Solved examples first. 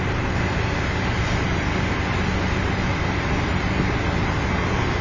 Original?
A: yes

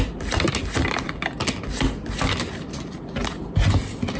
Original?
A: yes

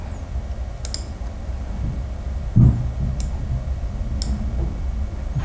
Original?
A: yes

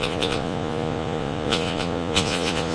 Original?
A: no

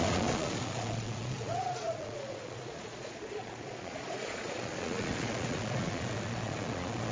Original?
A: no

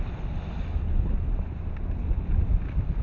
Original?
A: yes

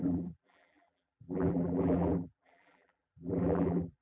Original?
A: no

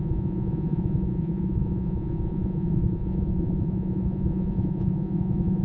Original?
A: no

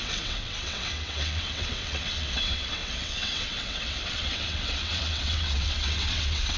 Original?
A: no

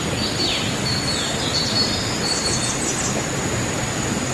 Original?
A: yes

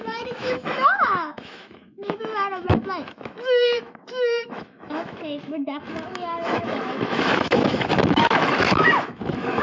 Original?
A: no